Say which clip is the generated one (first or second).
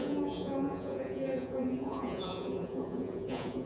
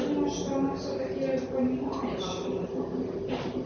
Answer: first